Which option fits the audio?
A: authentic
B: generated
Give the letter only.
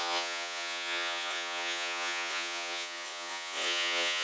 B